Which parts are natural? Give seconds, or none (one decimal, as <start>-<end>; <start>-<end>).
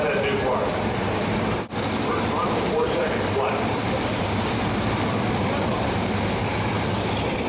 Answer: 0.0-2.4; 6.7-7.5